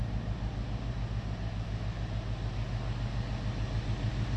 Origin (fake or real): real